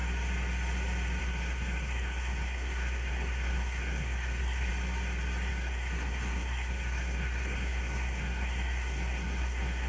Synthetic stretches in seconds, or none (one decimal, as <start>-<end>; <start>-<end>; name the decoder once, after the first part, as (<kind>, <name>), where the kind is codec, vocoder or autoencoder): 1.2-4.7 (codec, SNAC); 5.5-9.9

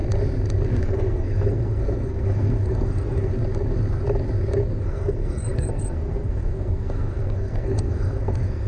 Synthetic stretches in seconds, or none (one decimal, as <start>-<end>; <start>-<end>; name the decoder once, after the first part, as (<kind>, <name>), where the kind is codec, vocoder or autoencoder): 0.8-3.3 (codec, SNAC); 4.8-8.7

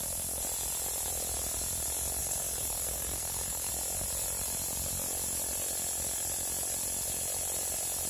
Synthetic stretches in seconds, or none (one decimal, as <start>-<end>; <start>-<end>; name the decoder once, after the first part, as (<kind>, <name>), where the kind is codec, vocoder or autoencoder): 2.2-3.7 (codec, SNAC)

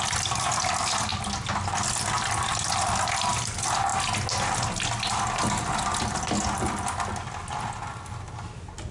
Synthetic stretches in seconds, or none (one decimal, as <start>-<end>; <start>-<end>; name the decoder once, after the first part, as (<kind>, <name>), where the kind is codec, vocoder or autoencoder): none

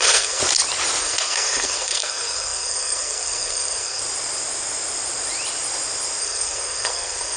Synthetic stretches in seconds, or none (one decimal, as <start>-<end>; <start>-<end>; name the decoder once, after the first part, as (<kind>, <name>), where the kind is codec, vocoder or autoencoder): 0.0-0.4 (codec, SNAC); 1.0-4.0; 6.2-7.4